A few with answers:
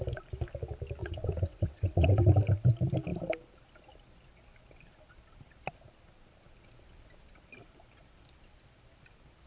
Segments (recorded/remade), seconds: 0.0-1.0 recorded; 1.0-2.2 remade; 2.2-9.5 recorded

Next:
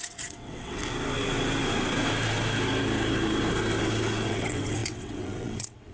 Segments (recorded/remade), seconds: 0.0-0.8 remade; 0.8-4.3 recorded; 4.3-5.9 remade

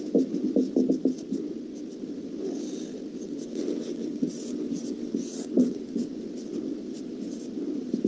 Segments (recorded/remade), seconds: 0.0-3.1 recorded; 3.1-6.1 remade; 6.1-8.1 recorded